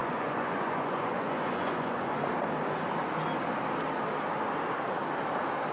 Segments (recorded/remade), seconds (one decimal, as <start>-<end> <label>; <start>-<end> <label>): 0.0-2.3 remade; 2.3-5.7 recorded